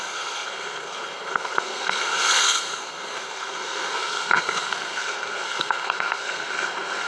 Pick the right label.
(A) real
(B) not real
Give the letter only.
B